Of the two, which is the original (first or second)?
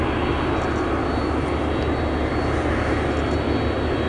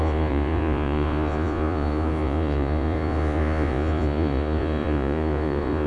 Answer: first